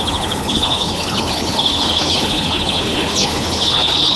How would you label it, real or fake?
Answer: fake